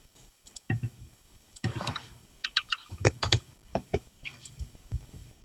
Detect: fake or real fake